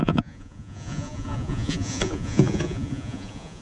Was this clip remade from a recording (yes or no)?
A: yes